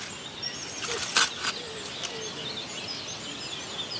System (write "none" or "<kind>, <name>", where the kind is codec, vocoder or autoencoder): none